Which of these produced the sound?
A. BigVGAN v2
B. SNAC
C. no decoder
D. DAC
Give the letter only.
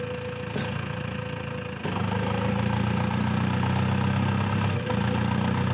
C